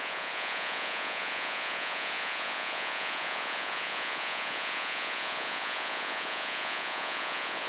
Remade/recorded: remade